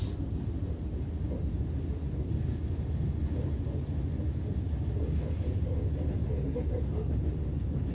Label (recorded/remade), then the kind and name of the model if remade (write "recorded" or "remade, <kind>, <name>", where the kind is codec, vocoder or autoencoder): recorded